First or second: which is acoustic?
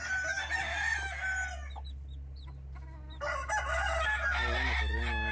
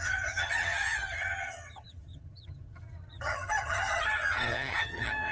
first